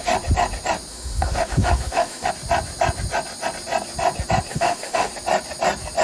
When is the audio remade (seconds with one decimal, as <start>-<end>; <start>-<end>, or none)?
0.9-2.3; 4.5-5.1